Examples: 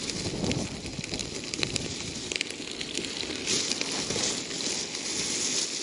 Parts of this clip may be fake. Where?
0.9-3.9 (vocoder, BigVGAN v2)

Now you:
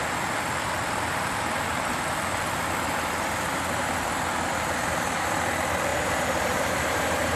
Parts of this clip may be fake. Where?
5.9-7.4 (vocoder, BigVGAN v2)

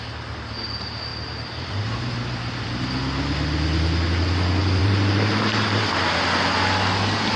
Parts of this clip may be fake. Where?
1.1-2.8 (vocoder, BigVGAN v2); 4.8-5.9

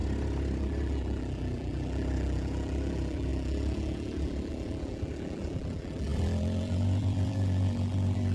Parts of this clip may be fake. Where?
0.6-8.3 (vocoder, BigVGAN v2)

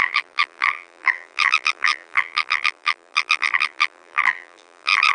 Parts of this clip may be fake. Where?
0.0-5.1 (vocoder, BigVGAN v2)

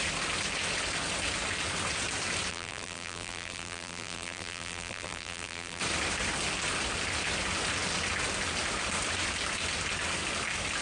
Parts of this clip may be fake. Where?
2.5-5.8 (vocoder, BigVGAN v2)